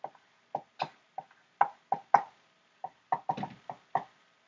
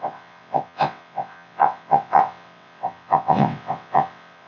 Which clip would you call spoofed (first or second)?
second